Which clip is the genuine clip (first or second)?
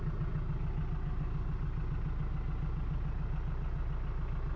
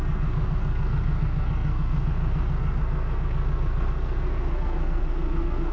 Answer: first